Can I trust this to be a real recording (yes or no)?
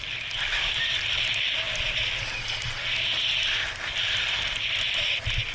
yes